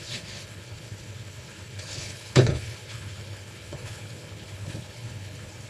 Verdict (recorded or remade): remade